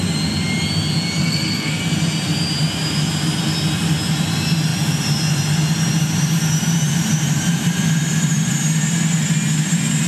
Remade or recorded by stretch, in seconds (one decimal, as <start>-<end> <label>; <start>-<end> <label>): 0.0-1.2 recorded; 1.2-1.8 remade; 1.8-10.1 recorded